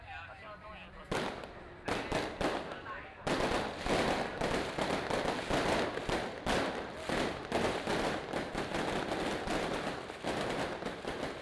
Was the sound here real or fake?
real